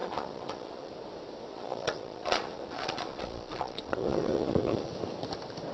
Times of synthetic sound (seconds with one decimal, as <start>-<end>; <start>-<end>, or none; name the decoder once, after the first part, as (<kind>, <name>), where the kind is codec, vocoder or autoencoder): 0.0-0.9 (vocoder, Vocos); 1.5-4.9